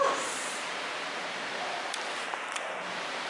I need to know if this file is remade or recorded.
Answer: remade